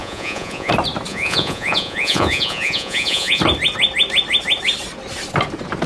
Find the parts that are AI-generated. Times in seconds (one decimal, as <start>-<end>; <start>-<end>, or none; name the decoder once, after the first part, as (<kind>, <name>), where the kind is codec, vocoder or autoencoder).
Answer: 0.0-0.7 (vocoder, Vocos); 1.1-3.4